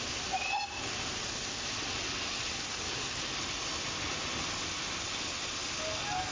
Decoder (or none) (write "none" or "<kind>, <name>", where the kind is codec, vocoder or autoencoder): none